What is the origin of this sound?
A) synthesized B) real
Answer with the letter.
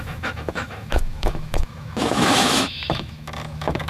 A